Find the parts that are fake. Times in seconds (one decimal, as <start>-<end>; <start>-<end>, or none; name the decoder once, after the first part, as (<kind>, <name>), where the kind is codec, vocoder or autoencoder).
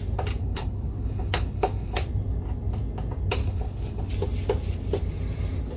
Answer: 0.4-2.0 (codec, HILCodec); 3.4-4.1